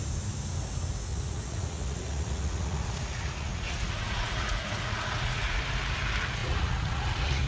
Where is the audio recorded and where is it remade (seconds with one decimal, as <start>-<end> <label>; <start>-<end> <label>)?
0.0-1.1 recorded; 1.1-5.6 remade; 5.6-6.4 recorded; 6.4-7.5 remade